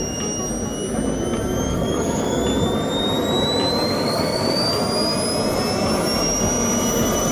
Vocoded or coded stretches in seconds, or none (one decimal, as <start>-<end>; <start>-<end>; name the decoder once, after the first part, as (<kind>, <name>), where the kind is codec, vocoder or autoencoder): 1.7-2.4 (codec, DAC); 3.9-4.7